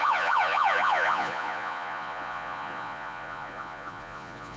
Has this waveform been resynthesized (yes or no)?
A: yes